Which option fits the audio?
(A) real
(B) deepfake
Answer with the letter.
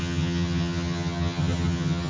B